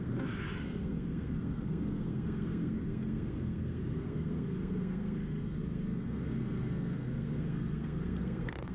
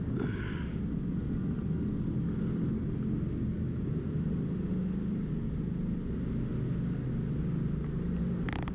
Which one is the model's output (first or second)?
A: first